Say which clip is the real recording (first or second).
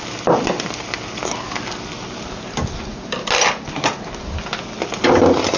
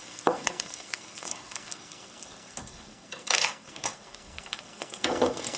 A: first